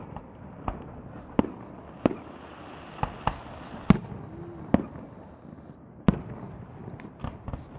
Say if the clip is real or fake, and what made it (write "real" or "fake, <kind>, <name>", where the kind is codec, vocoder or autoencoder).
real